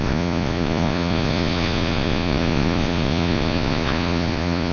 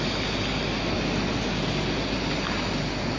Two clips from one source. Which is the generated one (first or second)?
first